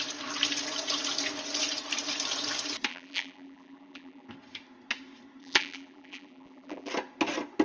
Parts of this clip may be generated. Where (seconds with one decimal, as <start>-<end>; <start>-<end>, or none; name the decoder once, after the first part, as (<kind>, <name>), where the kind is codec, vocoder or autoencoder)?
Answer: 2.9-4.3 (vocoder, BigVGAN v2); 5.4-6.9

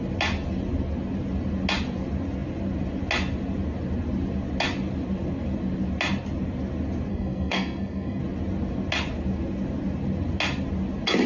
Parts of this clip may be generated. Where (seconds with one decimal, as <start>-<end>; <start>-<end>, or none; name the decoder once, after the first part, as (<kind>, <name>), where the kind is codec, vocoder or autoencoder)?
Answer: 7.1-8.2 (codec, SNAC)

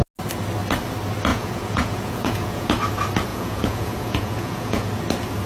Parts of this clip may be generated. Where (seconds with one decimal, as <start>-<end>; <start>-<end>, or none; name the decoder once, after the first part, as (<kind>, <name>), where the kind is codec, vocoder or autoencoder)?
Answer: 1.3-2.7 (vocoder, Vocos); 3.3-5.0